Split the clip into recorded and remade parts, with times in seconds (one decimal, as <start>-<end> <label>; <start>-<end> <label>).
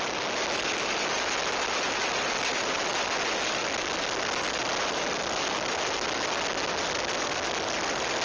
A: 0.0-8.2 recorded